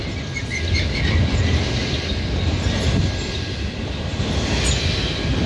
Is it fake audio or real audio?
real